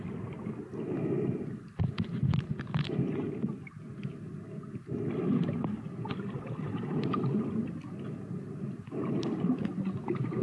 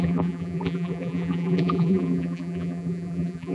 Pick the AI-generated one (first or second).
second